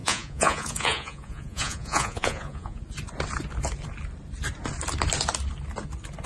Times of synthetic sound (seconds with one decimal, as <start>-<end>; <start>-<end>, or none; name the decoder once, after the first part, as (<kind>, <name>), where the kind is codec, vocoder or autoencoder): 0.0-2.8 (vocoder, Vocos)